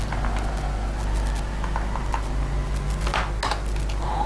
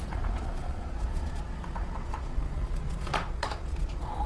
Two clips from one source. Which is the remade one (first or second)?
second